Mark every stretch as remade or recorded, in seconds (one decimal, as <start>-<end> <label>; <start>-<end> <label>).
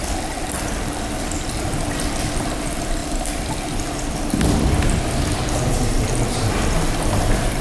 0.0-3.0 remade; 3.0-5.6 recorded; 5.6-7.6 remade